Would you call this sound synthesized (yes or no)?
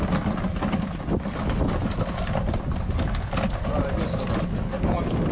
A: no